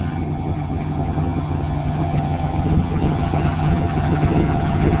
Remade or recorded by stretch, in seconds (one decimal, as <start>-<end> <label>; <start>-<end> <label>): 0.0-5.0 remade